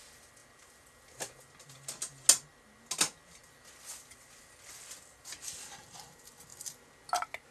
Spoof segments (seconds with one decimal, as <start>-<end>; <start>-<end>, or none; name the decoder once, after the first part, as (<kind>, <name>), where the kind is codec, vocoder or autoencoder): none